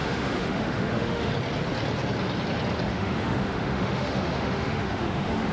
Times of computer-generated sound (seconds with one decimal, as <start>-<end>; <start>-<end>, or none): 0.0-1.3; 2.9-5.5